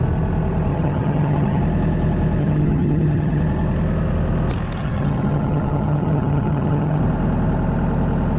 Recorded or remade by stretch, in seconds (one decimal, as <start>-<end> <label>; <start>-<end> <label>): 0.0-0.7 recorded; 0.7-1.6 remade; 1.6-2.4 recorded; 2.4-3.4 remade; 3.4-4.8 recorded; 4.8-7.0 remade; 7.0-8.4 recorded